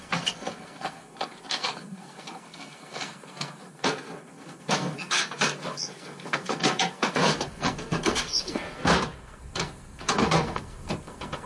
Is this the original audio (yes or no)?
no